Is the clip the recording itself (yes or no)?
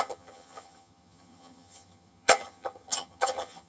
no